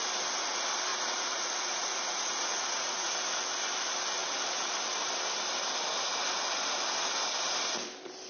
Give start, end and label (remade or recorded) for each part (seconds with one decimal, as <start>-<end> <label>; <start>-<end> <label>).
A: 0.0-0.9 recorded; 0.9-3.3 remade; 3.3-8.3 recorded